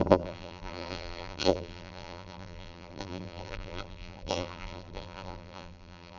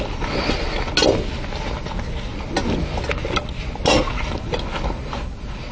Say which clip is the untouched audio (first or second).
second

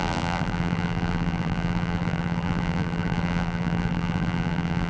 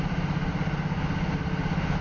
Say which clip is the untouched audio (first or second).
second